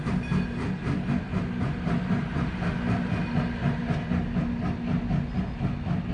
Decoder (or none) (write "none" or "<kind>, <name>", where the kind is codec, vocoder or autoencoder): none